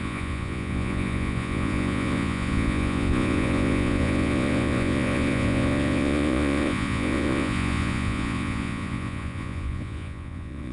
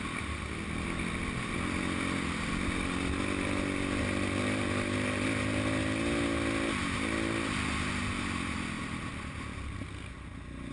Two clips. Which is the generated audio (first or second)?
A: first